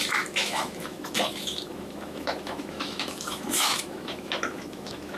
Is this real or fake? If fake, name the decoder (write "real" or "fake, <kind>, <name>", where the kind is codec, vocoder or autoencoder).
fake, autoencoder, DAC-VAE